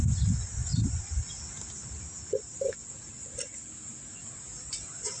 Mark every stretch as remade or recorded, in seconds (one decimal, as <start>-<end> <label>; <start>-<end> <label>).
0.0-5.2 recorded